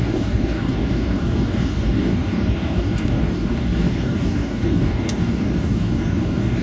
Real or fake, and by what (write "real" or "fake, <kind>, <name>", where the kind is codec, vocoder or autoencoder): fake, codec, DAC